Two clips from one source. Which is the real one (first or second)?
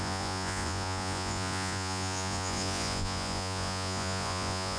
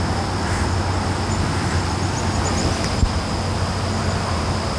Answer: second